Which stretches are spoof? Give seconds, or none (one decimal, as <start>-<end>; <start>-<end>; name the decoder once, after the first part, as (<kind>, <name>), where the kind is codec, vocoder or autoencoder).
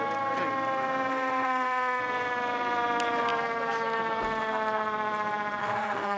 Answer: 1.1-2.0 (autoencoder, DAC-VAE); 5.6-6.2